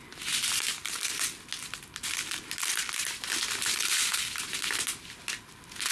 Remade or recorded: recorded